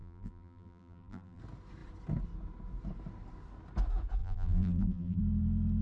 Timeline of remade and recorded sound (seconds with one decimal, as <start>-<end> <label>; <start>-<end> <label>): 0.0-1.4 remade; 1.4-4.2 recorded; 4.2-5.2 remade; 5.2-5.8 recorded